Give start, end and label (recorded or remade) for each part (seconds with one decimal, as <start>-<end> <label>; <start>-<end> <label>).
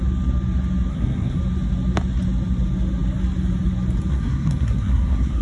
0.0-0.9 recorded; 0.9-1.4 remade; 1.4-4.1 recorded; 4.1-5.4 remade